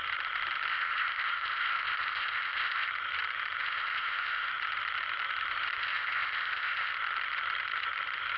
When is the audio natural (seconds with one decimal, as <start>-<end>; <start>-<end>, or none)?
0.0-0.7; 2.9-3.6; 4.5-5.8; 6.9-8.4